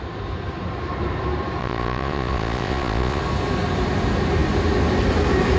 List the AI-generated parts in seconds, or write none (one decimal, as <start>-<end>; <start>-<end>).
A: 1.6-3.2